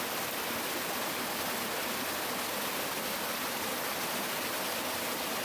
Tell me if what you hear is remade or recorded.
recorded